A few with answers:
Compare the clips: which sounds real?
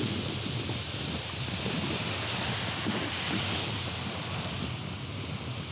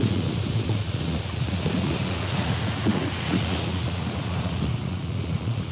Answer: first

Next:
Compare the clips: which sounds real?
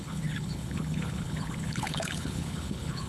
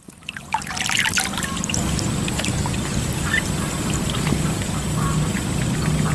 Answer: second